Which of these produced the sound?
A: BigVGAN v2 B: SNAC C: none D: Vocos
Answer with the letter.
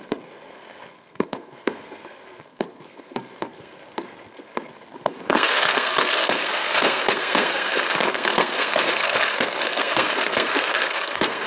B